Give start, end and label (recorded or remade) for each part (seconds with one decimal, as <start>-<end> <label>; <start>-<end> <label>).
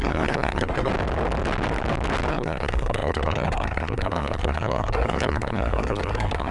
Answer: 0.0-0.9 remade; 0.9-2.3 recorded; 2.3-6.5 remade